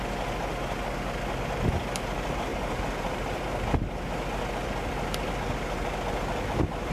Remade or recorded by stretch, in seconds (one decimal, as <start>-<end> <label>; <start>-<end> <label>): 0.0-2.5 recorded; 2.5-3.4 remade; 3.4-6.9 recorded

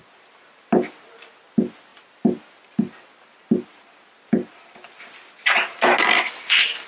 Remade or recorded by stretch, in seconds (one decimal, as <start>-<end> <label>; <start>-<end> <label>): 0.0-6.9 recorded

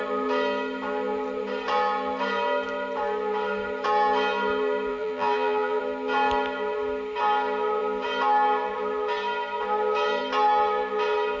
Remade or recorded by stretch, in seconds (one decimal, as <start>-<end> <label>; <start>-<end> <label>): 0.0-4.9 recorded; 4.9-5.8 remade; 5.8-11.4 recorded

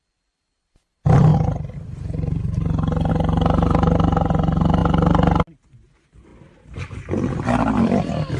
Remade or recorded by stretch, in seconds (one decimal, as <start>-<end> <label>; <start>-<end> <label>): 0.0-8.4 recorded

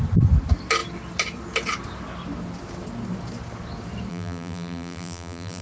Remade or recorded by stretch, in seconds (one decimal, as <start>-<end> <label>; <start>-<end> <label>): 0.0-4.1 recorded; 4.1-5.6 remade

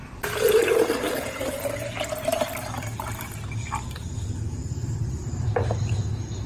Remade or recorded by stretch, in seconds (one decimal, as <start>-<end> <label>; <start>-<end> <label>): 0.0-0.6 recorded; 0.6-3.4 remade; 3.4-4.6 recorded; 4.6-6.1 remade; 6.1-6.5 recorded

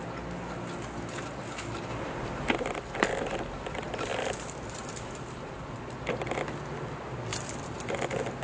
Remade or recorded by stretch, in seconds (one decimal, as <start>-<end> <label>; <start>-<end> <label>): 0.0-1.9 recorded; 1.9-2.5 remade; 2.5-4.1 recorded; 4.1-5.8 remade; 5.8-7.3 recorded; 7.3-7.9 remade; 7.9-8.4 recorded

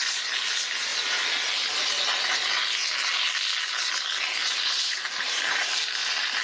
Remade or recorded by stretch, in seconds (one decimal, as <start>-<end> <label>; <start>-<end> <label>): 0.0-4.4 recorded; 4.4-6.4 remade